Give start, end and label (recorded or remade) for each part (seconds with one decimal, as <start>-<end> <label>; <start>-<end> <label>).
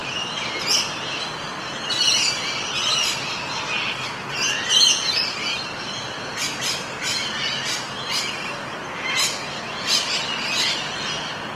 0.0-1.3 remade; 1.3-5.5 recorded; 5.5-8.3 remade; 8.3-11.6 recorded